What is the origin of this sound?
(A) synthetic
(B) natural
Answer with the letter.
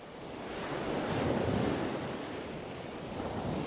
B